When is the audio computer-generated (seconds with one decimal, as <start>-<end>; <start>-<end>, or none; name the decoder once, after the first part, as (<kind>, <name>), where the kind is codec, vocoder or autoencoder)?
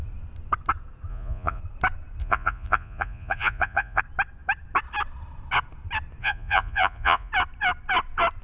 1.1-1.6 (vocoder, Vocos); 2.2-4.0; 6.2-7.3